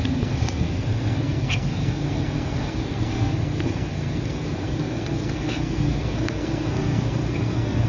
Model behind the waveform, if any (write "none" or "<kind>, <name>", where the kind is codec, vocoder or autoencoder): codec, SNAC